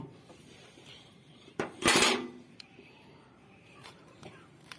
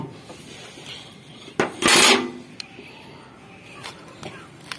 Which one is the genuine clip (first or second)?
second